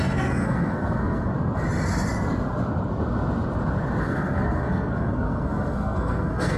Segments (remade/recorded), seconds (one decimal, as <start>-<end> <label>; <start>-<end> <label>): 0.0-1.3 remade; 1.3-4.0 recorded; 4.0-6.6 remade